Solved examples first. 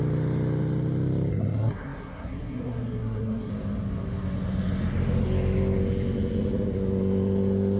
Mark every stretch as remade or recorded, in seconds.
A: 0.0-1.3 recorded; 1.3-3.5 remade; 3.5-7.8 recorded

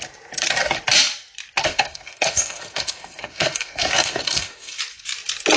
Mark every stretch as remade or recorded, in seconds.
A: 0.0-1.6 recorded; 1.6-4.8 remade; 4.8-5.6 recorded

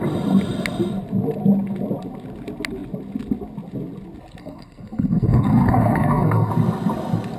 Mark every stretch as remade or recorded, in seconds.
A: 0.0-4.4 recorded; 4.4-6.5 remade; 6.5-7.4 recorded

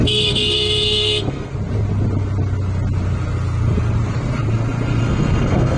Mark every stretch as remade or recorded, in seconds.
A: 0.0-1.5 remade; 1.5-5.0 recorded; 5.0-5.8 remade